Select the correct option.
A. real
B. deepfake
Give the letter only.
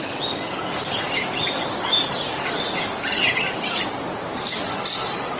A